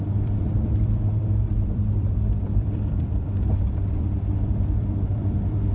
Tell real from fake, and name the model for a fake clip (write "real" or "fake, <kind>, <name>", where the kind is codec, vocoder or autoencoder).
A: fake, vocoder, BigVGAN v2